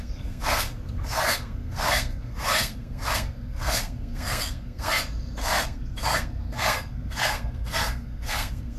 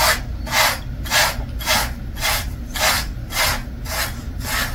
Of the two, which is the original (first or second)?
second